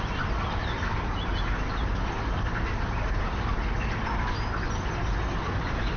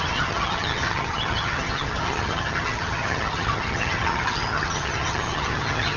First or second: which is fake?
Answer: second